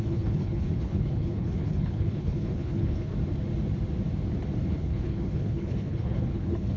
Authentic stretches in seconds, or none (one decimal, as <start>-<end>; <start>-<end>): 3.1-4.6